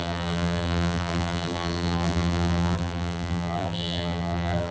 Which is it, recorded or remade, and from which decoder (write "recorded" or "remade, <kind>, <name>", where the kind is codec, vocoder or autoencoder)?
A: remade, vocoder, BigVGAN v2